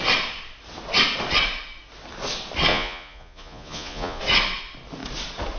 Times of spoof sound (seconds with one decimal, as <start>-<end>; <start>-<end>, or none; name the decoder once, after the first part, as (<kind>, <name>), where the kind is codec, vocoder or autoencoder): 2.7-4.2 (vocoder, Vocos)